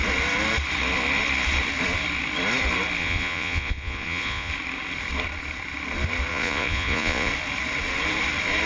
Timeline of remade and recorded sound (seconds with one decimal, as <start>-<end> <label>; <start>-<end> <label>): 0.0-3.0 recorded; 3.0-4.5 remade; 4.5-6.3 recorded; 6.3-7.3 remade; 7.3-8.7 recorded